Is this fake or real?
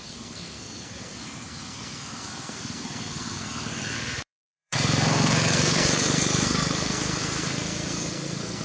fake